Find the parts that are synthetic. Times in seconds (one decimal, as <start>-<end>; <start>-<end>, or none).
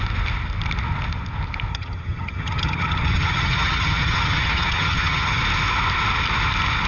1.7-5.4